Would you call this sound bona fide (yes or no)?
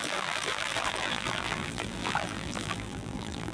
no